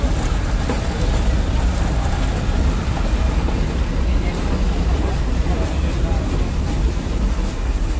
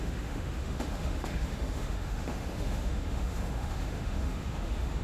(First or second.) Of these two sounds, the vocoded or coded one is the second